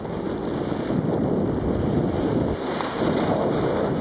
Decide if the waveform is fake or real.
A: real